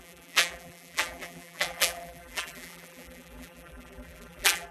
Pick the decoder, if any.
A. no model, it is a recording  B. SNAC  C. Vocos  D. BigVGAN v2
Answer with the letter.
D